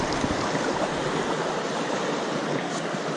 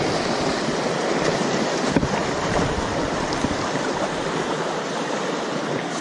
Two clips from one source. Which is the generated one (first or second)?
second